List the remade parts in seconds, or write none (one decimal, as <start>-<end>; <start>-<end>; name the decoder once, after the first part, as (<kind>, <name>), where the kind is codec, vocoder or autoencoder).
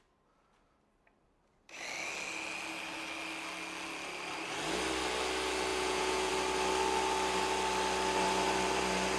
5.7-6.3 (vocoder, Vocos)